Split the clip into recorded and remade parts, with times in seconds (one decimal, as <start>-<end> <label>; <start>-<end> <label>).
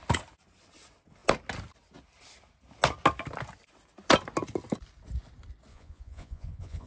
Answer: 0.0-5.7 recorded; 5.7-6.9 remade